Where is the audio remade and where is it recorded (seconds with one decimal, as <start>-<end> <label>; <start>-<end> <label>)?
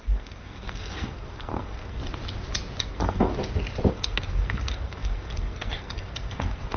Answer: 0.0-2.0 remade; 2.0-2.8 recorded; 2.8-3.3 remade; 3.3-3.9 recorded; 3.9-6.8 remade